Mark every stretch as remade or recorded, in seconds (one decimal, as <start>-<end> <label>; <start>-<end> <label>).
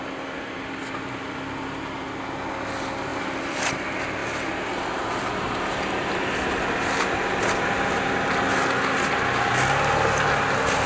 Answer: 0.0-3.1 recorded; 3.1-3.6 remade; 3.6-4.2 recorded; 4.2-5.3 remade; 5.3-10.9 recorded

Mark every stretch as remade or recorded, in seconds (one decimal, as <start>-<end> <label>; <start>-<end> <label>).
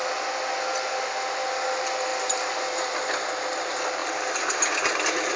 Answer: 0.0-2.1 recorded; 2.1-3.3 remade; 3.3-5.4 recorded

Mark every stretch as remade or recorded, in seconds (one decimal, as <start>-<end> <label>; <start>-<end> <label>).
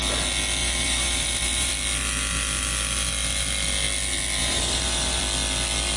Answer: 0.0-0.6 recorded; 0.6-1.7 remade; 1.7-4.4 recorded; 4.4-5.2 remade; 5.2-6.0 recorded